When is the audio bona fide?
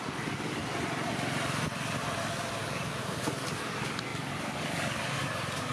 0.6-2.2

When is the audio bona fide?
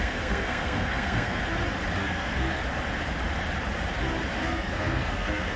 1.4-2.0; 2.6-4.4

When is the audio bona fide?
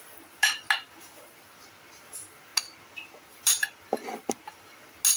0.0-5.2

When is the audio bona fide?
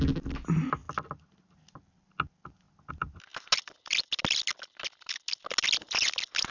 0.0-6.5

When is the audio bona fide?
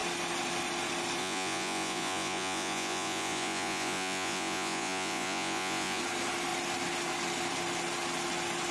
0.0-1.2; 6.0-8.7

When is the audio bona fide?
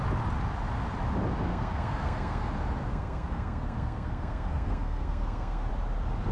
0.0-1.5; 2.5-2.9; 5.7-6.3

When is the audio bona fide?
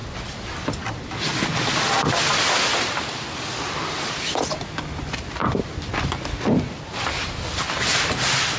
0.0-8.6